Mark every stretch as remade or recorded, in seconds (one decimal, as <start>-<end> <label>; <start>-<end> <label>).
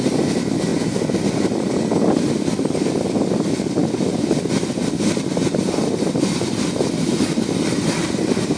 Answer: 0.0-8.6 recorded